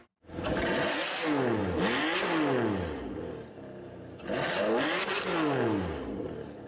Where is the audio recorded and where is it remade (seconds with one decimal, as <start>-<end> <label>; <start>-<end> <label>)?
0.0-6.7 recorded